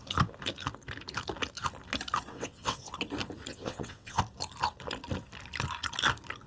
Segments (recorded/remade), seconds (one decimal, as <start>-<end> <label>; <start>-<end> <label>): 0.0-2.3 recorded; 2.3-2.9 remade; 2.9-3.5 recorded; 3.5-4.2 remade; 4.2-6.5 recorded